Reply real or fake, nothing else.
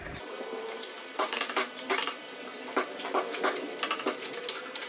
fake